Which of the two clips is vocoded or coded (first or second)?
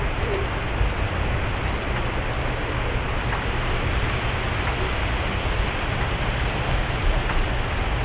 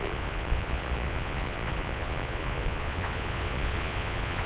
second